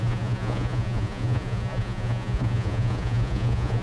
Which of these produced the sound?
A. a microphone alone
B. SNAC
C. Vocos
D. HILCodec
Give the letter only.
C